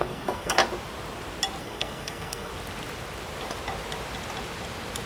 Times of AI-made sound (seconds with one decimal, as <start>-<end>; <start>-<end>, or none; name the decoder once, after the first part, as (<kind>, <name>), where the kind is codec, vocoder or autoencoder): 0.0-0.6 (codec, SNAC); 1.6-2.5